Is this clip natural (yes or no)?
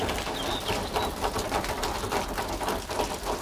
yes